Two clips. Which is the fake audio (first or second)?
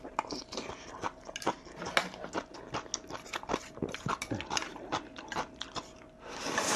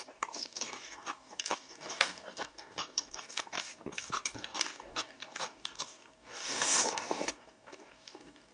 second